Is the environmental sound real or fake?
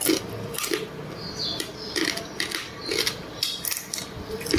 real